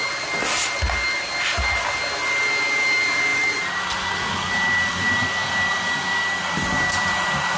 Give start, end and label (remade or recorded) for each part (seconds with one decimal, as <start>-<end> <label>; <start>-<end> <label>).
0.0-7.6 recorded